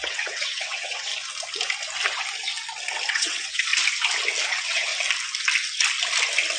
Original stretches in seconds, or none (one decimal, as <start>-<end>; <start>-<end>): 1.1-3.1; 3.7-4.5; 4.9-6.6